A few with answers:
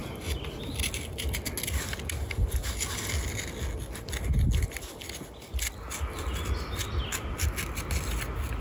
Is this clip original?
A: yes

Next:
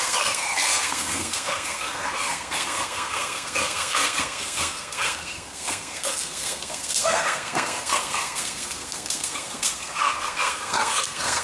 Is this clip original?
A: no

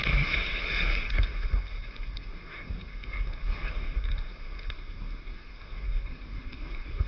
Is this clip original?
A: no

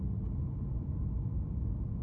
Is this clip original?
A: yes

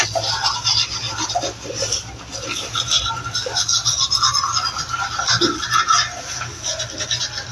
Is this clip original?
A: yes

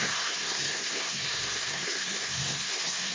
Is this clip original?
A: no